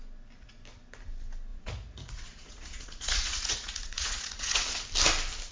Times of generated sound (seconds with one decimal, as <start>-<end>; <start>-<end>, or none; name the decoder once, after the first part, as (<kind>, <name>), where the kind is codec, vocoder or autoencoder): 1.5-4.8 (vocoder, Vocos)